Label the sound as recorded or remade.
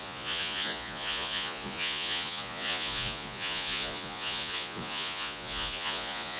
remade